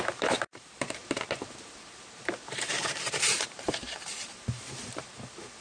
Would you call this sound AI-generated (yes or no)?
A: yes